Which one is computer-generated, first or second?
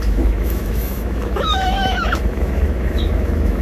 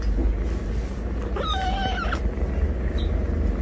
first